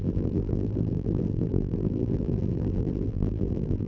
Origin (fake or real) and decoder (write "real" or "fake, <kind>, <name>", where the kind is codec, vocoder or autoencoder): fake, vocoder, BigVGAN v2